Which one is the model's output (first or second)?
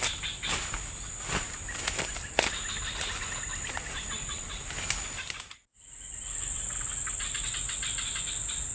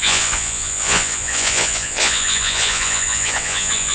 second